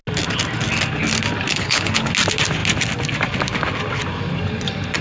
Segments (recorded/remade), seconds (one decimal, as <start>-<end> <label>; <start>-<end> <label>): 0.0-1.5 recorded; 1.5-2.1 remade; 2.1-5.0 recorded